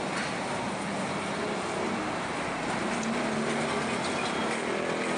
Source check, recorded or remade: recorded